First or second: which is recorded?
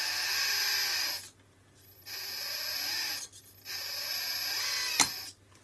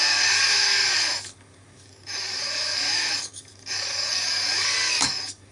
first